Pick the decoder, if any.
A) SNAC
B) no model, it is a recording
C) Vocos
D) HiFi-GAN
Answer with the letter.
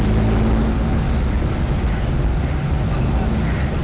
B